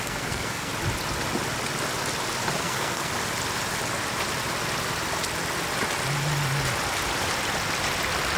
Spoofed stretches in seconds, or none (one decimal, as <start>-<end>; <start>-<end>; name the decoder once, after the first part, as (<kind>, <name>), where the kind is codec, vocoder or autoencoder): 0.0-0.7 (codec, SNAC); 2.6-3.1